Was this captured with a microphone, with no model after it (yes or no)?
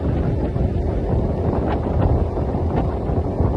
yes